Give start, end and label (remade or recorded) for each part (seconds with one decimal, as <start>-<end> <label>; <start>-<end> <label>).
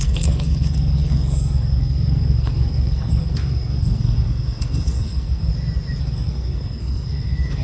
0.0-5.5 remade; 5.5-6.0 recorded; 6.0-7.6 remade